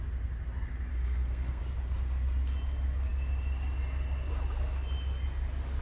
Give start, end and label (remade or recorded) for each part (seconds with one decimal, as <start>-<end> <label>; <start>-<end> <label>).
0.0-0.9 recorded; 0.9-1.6 remade; 1.6-5.8 recorded